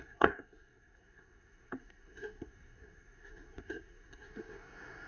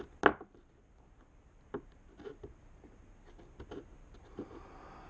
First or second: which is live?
second